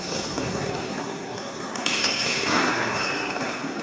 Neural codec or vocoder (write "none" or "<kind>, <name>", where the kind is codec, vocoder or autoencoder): codec, SNAC